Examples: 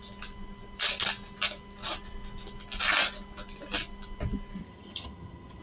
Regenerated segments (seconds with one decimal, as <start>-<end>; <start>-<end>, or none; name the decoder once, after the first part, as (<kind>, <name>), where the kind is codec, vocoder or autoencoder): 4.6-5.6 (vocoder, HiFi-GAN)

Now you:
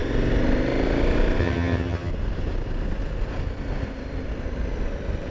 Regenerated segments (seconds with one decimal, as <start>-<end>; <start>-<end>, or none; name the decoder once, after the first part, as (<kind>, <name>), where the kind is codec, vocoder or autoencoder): 1.4-2.1 (vocoder, HiFi-GAN)

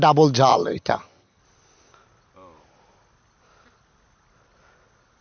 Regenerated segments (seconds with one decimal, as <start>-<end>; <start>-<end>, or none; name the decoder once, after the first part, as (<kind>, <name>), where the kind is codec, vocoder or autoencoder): 0.5-1.4 (vocoder, HiFi-GAN)

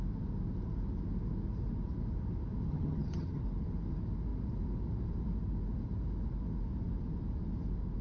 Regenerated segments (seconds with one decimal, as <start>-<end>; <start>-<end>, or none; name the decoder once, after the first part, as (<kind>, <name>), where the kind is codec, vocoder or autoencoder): 2.7-3.4 (vocoder, HiFi-GAN)